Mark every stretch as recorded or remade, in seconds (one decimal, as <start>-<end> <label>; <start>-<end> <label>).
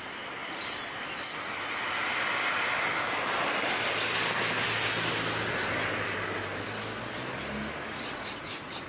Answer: 0.0-8.9 recorded